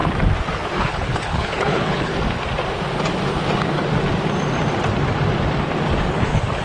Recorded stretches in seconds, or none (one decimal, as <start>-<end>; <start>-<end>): 0.0-0.8; 2.1-6.1